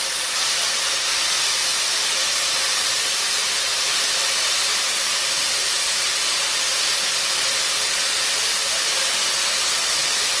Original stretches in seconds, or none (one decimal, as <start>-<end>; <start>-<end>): 0.0-2.2; 6.9-10.4